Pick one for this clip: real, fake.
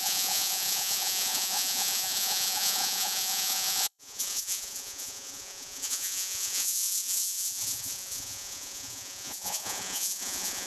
fake